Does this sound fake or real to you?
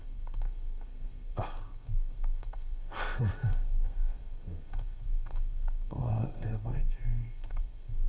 fake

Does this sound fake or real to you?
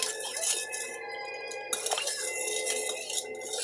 real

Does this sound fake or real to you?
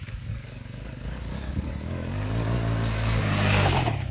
fake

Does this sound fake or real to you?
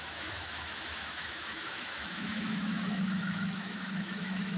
fake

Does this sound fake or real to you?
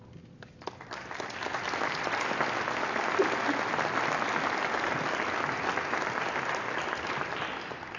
real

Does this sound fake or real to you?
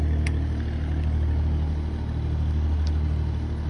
real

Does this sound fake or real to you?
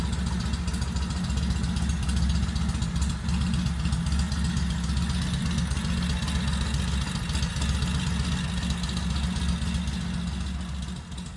real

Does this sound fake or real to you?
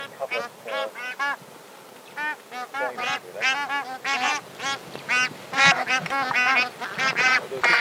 real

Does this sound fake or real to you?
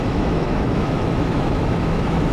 fake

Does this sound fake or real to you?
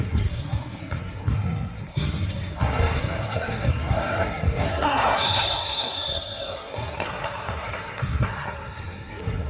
fake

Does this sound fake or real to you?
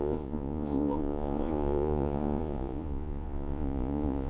fake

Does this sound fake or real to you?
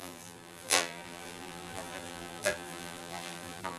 fake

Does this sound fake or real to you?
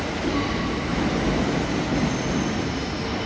real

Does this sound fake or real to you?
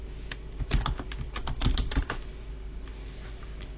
real